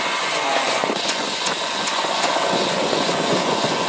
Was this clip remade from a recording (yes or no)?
yes